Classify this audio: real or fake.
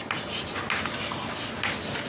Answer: real